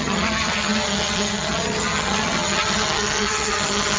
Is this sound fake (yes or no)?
yes